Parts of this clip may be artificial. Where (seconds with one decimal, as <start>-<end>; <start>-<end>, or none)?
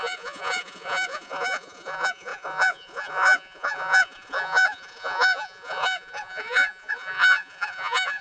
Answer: 0.0-8.2